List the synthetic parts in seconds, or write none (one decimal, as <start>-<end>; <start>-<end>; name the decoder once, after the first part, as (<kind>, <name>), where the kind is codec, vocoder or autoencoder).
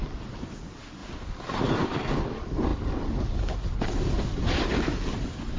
none